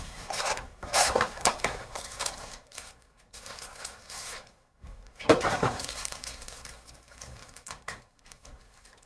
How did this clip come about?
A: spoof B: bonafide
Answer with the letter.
A